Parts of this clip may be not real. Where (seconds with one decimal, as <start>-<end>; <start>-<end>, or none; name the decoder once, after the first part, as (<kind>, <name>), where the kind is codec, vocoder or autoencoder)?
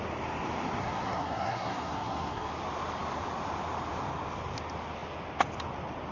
0.8-2.5 (codec, SNAC)